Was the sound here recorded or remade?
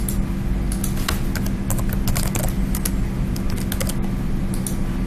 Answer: recorded